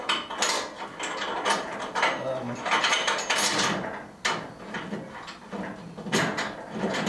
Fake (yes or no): no